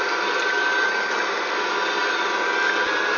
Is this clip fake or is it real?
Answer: real